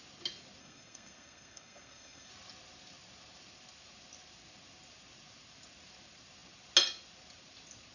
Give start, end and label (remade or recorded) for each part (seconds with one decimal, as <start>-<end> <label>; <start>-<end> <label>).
0.0-0.6 recorded; 0.6-2.3 remade; 2.3-7.9 recorded